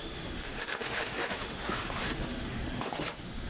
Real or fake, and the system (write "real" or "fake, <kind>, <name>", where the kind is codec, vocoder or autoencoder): fake, autoencoder, DAC-VAE